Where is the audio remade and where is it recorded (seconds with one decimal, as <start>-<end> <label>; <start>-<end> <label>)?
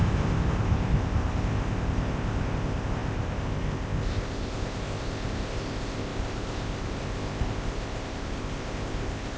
0.0-9.4 remade